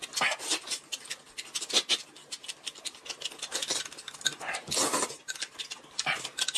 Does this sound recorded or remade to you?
recorded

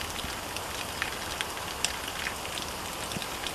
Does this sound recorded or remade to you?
recorded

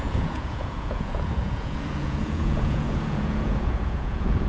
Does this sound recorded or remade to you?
remade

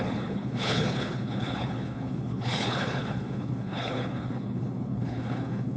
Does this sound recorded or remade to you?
remade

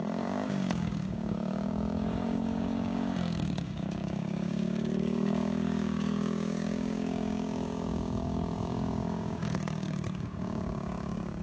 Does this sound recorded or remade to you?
remade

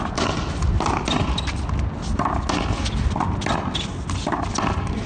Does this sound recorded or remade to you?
recorded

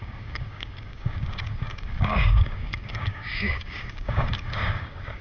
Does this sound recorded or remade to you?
remade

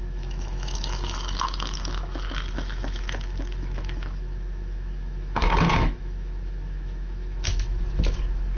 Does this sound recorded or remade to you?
remade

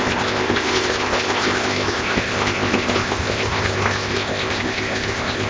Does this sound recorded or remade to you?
remade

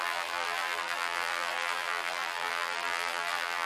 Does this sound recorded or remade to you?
remade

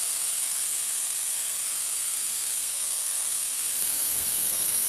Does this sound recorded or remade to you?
remade